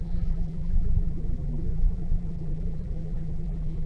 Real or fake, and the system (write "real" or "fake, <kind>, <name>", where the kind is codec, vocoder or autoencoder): fake, vocoder, BigVGAN v2